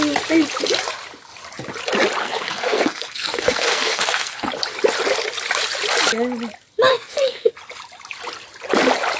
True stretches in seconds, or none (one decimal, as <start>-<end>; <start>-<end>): 0.0-2.2; 4.5-6.9; 7.5-9.2